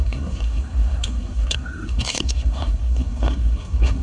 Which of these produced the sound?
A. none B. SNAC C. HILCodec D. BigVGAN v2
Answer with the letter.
B